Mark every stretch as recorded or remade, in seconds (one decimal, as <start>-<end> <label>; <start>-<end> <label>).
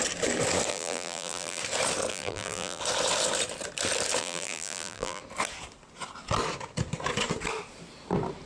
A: 0.0-0.7 recorded; 0.7-1.6 remade; 1.6-2.1 recorded; 2.1-2.8 remade; 2.8-4.2 recorded; 4.2-5.2 remade; 5.2-8.5 recorded